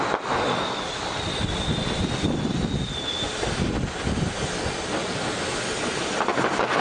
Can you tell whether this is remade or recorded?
recorded